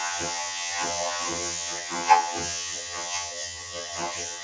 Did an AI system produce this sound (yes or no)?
yes